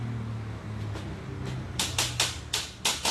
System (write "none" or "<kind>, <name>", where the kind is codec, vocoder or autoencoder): none